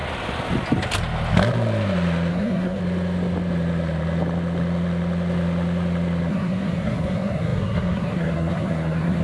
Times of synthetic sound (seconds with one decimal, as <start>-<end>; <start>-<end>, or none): 2.3-2.8; 6.3-9.2